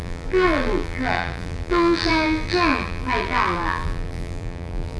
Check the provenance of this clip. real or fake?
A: fake